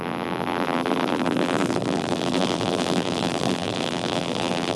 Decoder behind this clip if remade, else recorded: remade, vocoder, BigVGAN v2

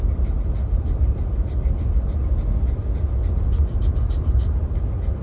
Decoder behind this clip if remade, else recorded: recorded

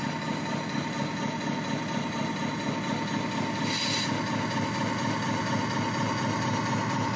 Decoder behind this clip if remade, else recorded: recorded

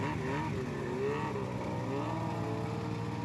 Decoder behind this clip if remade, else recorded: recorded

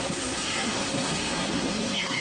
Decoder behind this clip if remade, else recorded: remade, codec, SNAC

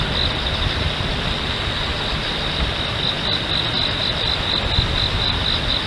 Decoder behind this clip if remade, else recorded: recorded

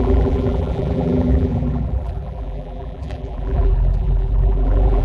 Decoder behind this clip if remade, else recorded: remade, vocoder, BigVGAN v2